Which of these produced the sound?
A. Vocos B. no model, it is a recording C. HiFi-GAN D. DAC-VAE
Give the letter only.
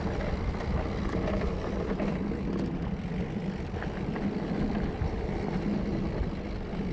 B